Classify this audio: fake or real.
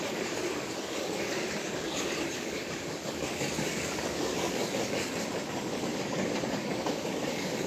fake